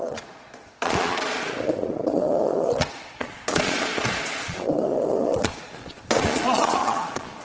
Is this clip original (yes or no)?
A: no